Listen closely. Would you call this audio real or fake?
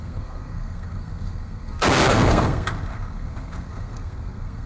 fake